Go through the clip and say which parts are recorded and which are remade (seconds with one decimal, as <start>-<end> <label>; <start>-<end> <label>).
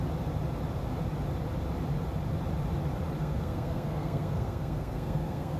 0.0-3.2 recorded; 3.2-5.6 remade